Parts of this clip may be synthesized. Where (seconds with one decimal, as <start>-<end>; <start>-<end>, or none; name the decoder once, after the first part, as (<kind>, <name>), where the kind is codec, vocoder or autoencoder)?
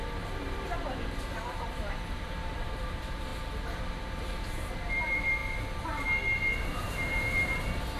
0.0-3.3 (vocoder, BigVGAN v2); 4.3-5.4; 6.8-8.0